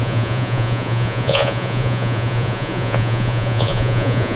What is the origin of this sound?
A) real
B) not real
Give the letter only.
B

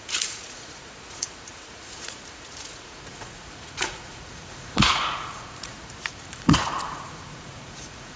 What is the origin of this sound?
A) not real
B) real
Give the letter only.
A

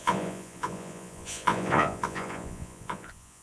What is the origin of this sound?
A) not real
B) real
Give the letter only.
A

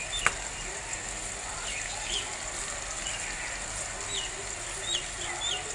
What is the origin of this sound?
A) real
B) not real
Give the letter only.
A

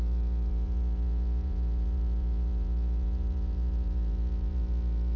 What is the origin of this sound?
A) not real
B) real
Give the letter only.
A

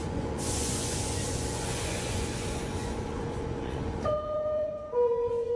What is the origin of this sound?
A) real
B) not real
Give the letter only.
B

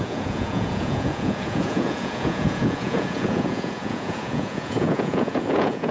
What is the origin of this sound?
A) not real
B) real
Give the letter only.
A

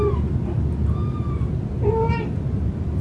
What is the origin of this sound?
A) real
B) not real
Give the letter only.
A